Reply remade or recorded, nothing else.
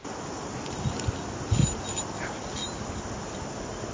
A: recorded